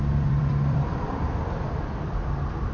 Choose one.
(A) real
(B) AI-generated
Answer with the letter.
B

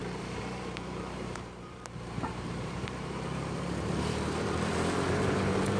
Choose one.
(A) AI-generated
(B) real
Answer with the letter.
A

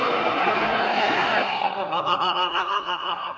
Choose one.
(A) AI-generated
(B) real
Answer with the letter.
A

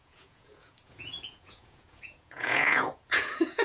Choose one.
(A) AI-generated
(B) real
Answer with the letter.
A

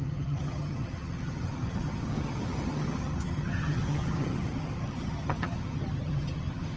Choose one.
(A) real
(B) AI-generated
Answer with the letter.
B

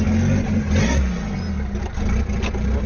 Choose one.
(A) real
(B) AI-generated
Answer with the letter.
A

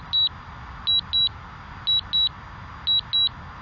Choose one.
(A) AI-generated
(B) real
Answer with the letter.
B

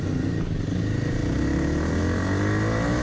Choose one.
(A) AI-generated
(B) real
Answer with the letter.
B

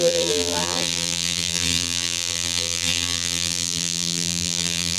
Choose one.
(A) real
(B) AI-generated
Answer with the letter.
B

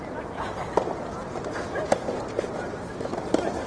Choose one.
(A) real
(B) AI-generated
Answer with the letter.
A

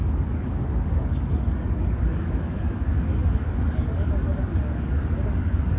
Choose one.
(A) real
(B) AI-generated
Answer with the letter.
B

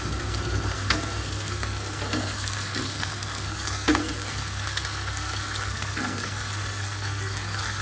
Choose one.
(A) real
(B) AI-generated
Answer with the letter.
B